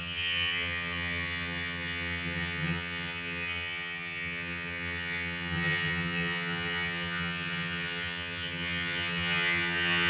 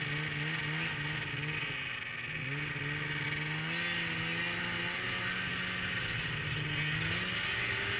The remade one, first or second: first